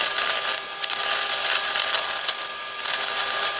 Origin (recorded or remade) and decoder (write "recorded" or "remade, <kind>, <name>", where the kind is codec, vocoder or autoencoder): recorded